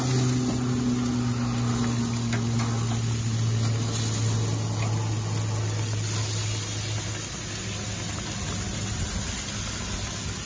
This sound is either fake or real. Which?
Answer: real